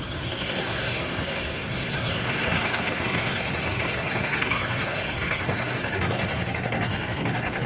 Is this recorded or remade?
remade